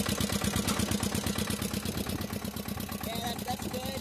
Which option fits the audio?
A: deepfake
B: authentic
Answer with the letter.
B